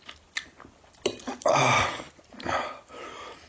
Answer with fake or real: real